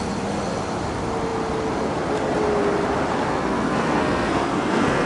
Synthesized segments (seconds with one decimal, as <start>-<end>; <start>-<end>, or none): 3.3-5.1